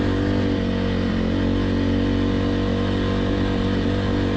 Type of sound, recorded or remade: recorded